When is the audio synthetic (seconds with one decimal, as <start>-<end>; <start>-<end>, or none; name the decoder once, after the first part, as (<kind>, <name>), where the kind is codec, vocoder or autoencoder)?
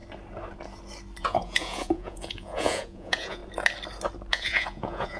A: 1.2-3.4 (vocoder, Vocos); 4.3-5.2